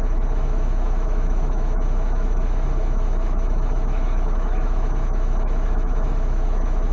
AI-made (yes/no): yes